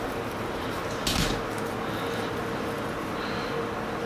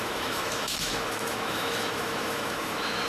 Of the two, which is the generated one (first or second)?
second